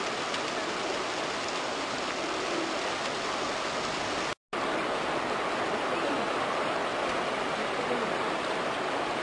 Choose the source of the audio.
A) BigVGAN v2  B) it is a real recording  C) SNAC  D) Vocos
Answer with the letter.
B